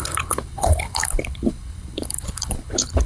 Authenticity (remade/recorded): remade